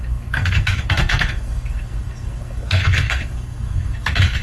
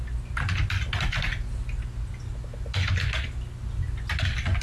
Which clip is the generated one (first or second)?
first